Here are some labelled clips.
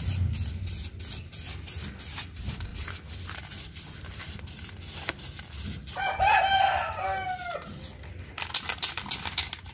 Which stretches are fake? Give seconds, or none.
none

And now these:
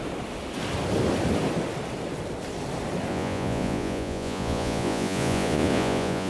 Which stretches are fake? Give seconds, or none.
3.1-6.3 (vocoder, Vocos)

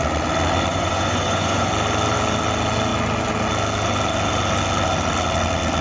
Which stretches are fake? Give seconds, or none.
0.7-1.7 (vocoder, Vocos)

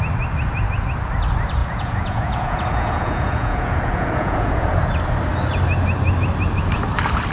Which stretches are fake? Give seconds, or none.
1.6-4.9 (vocoder, Vocos)

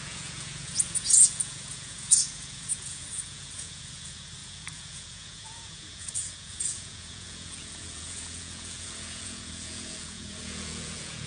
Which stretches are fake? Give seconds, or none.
0.0-11.3 (vocoder, Vocos)

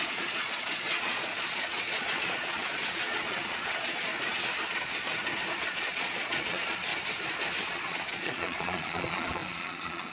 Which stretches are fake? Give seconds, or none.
0.0-4.1 (vocoder, Vocos); 4.7-5.2; 5.7-6.9; 7.6-10.1